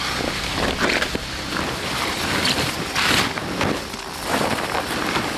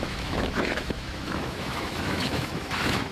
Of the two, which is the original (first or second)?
first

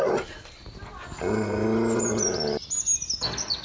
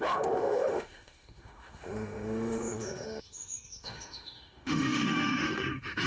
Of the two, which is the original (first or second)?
first